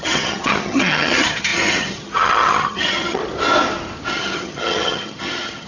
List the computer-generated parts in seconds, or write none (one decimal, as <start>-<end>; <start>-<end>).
0.0-3.2; 4.1-5.7